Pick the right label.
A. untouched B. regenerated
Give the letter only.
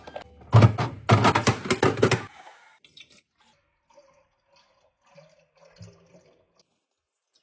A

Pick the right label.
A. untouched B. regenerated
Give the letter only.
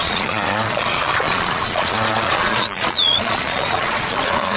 B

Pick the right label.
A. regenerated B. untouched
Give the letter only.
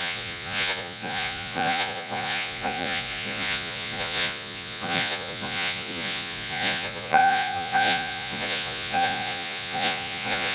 A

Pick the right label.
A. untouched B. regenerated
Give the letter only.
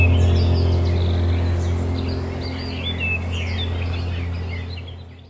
A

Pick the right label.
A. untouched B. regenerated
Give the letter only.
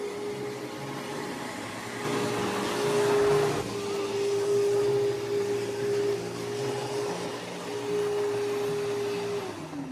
A